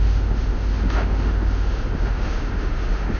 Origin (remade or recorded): remade